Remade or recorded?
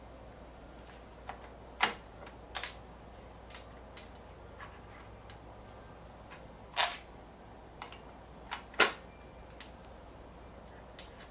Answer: recorded